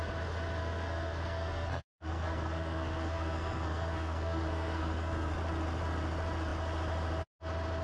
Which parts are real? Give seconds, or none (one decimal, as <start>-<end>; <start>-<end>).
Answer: 0.0-0.6; 5.3-7.8